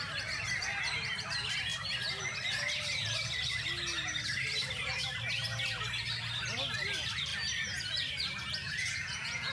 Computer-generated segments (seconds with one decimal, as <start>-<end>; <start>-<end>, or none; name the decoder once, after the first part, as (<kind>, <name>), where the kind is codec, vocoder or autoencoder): 8.6-9.5 (vocoder, Vocos)